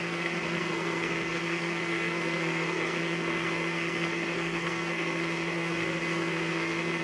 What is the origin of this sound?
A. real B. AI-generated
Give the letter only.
B